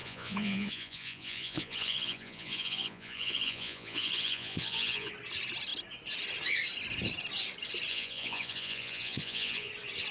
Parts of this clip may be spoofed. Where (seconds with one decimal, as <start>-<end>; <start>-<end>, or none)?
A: 0.0-5.1; 7.9-9.7